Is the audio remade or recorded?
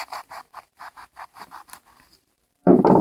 remade